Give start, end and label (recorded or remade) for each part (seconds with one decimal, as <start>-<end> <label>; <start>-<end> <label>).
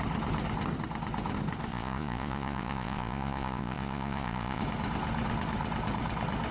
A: 0.0-1.7 recorded; 1.7-4.6 remade; 4.6-6.5 recorded